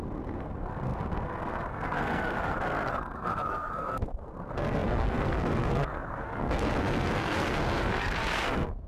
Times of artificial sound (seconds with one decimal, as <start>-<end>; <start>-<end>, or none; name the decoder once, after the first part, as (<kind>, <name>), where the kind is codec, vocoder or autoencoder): 0.0-8.9 (codec, SNAC)